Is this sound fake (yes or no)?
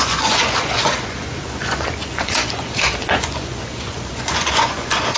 yes